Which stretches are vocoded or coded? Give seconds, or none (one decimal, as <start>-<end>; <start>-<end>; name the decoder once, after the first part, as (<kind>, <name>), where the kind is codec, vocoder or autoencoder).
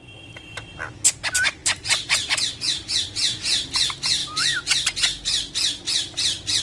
1.6-2.5 (vocoder, BigVGAN v2); 3.2-3.8